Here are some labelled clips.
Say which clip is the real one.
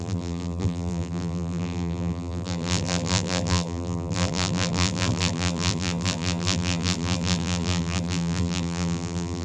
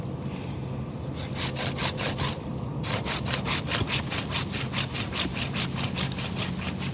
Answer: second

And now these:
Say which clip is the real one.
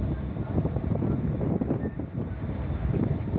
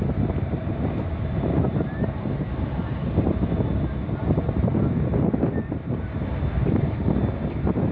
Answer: second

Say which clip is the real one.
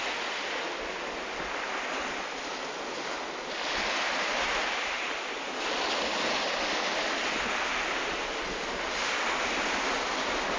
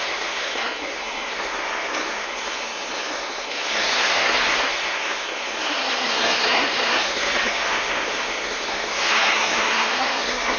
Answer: first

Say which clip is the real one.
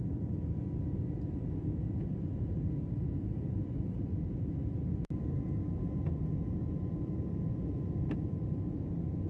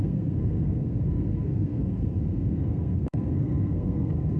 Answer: first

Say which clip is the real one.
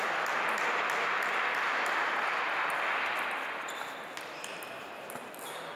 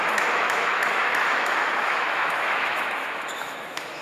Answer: first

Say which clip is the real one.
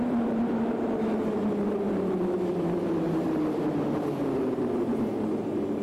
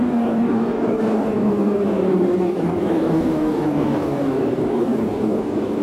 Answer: first